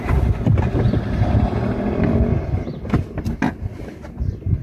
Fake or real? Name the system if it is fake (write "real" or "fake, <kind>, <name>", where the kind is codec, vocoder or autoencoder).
real